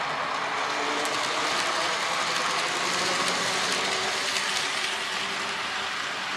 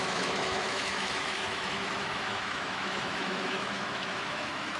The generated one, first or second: second